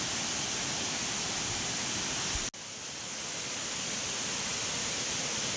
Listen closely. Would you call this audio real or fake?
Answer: real